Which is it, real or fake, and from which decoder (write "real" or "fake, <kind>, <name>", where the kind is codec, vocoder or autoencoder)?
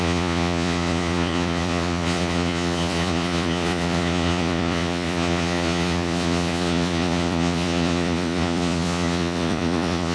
fake, vocoder, Vocos